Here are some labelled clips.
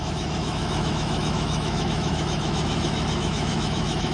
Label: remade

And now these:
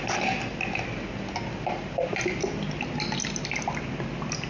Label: recorded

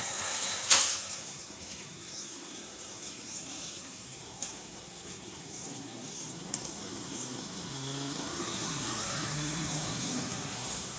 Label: remade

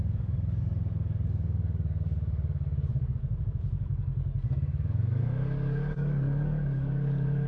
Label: remade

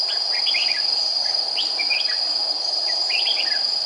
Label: remade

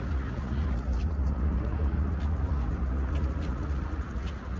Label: remade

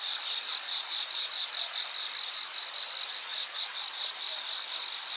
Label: remade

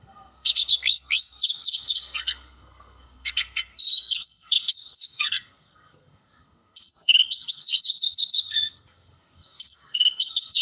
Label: remade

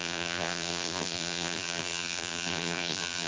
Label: remade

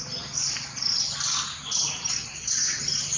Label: recorded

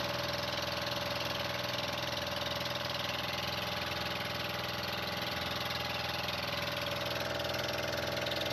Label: recorded